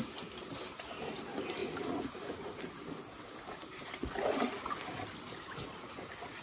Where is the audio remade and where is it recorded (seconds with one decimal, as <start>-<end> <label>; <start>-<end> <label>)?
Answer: 0.0-1.6 recorded; 1.6-2.6 remade; 2.6-4.0 recorded; 4.0-4.8 remade; 4.8-6.4 recorded